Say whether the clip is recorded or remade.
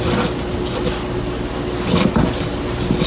recorded